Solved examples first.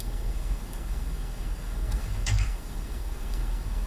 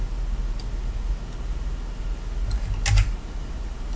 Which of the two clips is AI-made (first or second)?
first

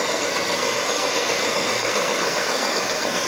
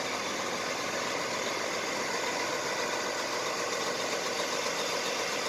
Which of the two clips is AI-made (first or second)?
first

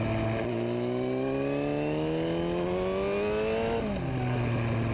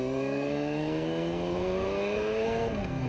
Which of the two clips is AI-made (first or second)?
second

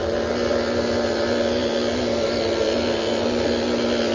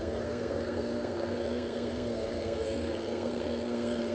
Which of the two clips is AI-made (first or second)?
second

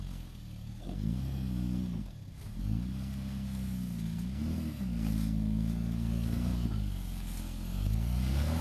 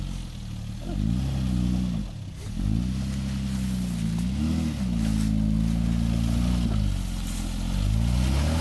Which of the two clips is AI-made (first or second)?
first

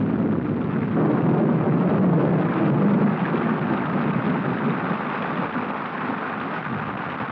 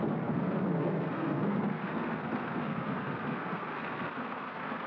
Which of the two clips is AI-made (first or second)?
second